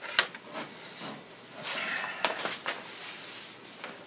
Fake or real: real